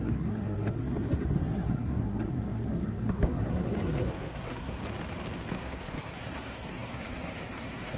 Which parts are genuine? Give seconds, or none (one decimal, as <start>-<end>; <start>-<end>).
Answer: 4.8-5.5